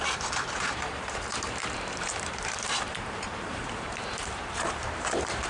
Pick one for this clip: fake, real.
fake